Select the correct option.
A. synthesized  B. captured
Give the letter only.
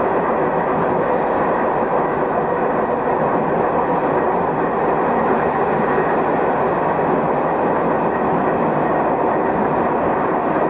B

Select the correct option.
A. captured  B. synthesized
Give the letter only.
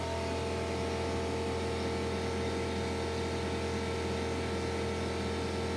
A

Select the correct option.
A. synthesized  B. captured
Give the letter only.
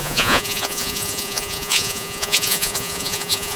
A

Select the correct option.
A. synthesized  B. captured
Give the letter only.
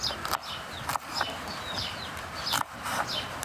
B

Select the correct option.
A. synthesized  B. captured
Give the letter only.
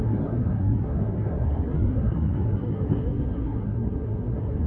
A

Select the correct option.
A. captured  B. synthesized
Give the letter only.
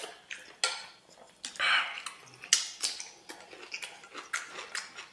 A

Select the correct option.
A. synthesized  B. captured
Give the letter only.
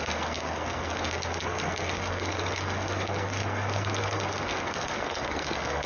A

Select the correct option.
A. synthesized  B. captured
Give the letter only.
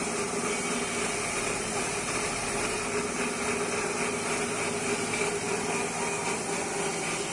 B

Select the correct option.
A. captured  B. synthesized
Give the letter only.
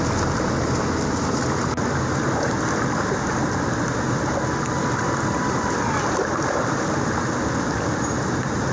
A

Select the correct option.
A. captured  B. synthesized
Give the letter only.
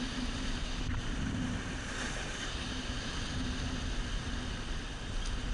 A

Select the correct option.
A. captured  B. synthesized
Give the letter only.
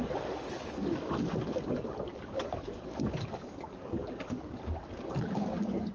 B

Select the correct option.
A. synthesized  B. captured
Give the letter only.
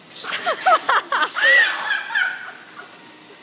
B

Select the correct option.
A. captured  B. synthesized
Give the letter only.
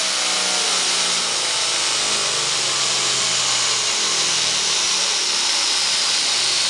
A